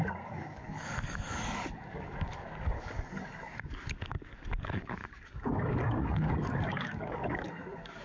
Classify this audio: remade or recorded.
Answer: remade